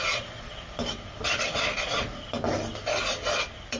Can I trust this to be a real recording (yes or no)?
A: yes